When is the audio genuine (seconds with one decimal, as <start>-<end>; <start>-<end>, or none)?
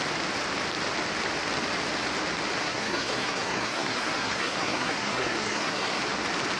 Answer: 0.0-2.6; 6.0-6.6